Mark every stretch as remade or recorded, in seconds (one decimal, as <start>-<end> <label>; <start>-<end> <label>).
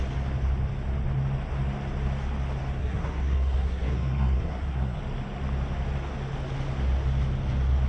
0.0-2.8 recorded; 2.8-5.0 remade; 5.0-7.9 recorded